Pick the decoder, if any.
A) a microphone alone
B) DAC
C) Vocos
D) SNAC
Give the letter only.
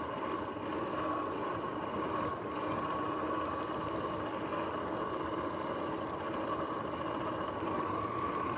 A